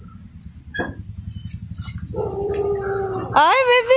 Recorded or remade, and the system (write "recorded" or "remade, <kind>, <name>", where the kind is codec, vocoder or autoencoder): recorded